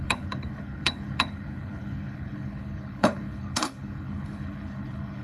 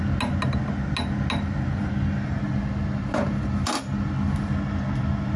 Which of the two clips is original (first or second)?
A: second